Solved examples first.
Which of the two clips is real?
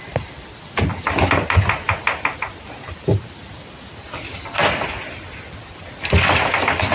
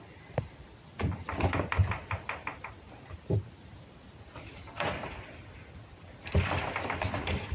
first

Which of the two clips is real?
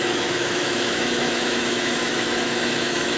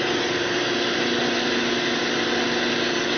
second